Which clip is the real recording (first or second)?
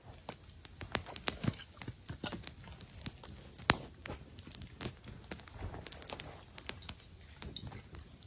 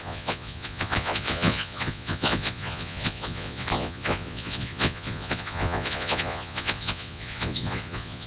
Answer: first